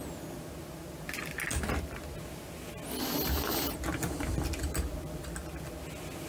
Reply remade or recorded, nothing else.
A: recorded